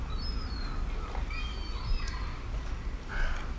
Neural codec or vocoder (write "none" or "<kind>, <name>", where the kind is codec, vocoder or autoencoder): none